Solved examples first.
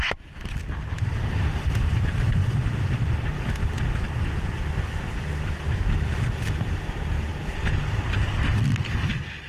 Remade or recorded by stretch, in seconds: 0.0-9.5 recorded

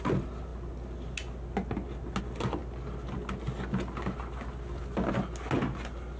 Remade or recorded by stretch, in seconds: 0.0-6.2 recorded

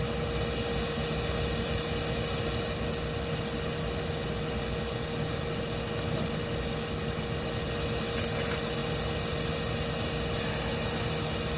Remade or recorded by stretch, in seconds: 0.0-11.6 recorded